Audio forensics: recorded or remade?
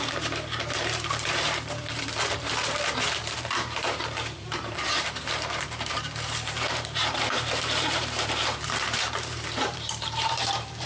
remade